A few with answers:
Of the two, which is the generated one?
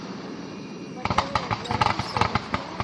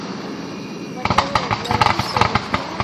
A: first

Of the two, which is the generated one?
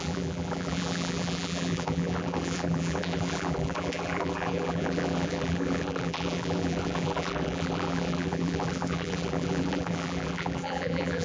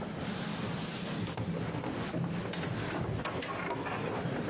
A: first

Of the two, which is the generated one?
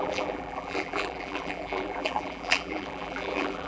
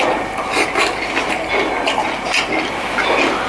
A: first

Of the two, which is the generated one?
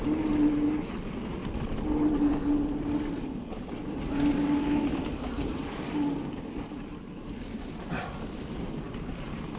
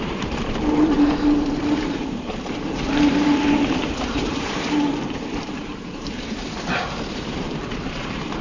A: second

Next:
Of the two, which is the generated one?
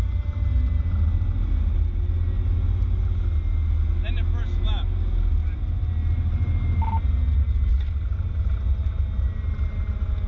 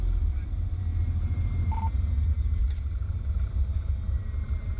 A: second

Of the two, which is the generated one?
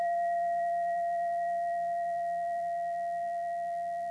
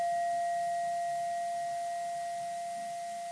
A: first